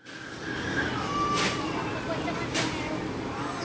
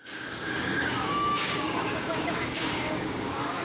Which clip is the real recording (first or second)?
first